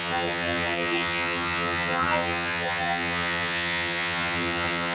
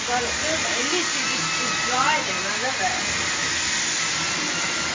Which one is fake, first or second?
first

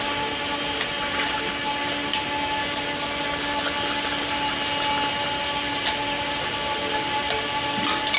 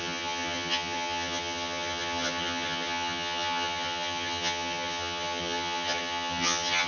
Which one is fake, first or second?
second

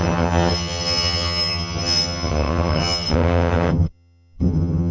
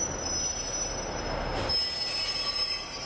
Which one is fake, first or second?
first